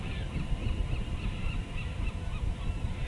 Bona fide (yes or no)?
yes